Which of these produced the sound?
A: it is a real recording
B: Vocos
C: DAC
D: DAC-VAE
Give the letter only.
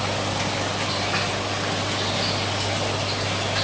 A